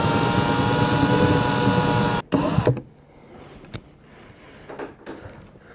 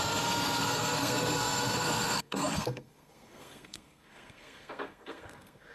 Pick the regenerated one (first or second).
second